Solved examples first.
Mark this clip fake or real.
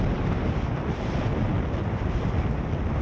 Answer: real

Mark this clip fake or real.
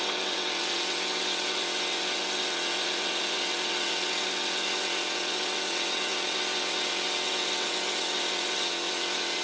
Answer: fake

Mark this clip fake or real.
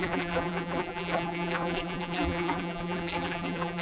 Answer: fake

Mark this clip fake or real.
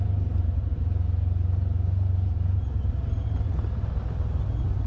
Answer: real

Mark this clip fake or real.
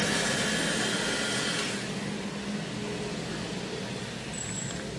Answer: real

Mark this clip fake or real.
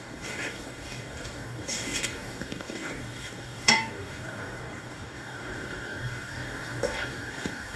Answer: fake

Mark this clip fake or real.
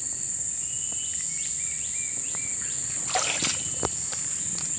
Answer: real